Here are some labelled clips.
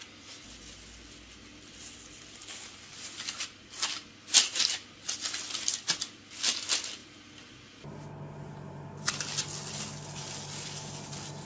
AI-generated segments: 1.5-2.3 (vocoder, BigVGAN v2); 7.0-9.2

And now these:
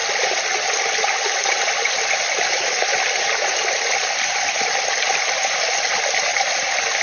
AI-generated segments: 4.2-6.3 (vocoder, BigVGAN v2)